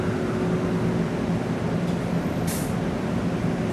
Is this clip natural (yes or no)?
yes